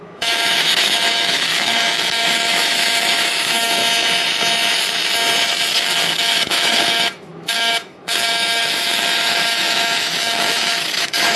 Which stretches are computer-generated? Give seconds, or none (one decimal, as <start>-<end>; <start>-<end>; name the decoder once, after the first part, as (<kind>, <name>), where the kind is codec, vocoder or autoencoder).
0.0-3.8 (autoencoder, DAC-VAE); 5.7-11.4